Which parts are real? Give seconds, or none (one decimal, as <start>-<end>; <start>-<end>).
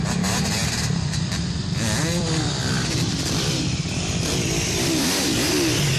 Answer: 0.0-0.6; 4.2-6.0